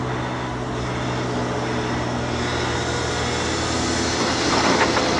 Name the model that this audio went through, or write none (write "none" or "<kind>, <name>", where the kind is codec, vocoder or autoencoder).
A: none